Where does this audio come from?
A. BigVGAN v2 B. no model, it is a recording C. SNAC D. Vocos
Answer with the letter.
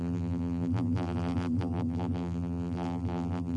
A